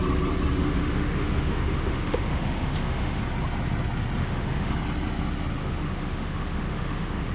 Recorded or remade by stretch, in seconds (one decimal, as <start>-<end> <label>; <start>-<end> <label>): 0.0-0.6 recorded; 0.6-3.2 remade; 3.2-4.2 recorded; 4.2-4.7 remade; 4.7-5.6 recorded; 5.6-7.3 remade